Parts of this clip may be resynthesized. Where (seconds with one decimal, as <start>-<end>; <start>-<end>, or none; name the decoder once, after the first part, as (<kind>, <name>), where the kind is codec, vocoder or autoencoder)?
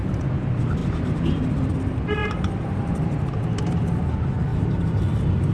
0.8-1.3 (vocoder, BigVGAN v2); 2.2-4.0; 4.5-5.0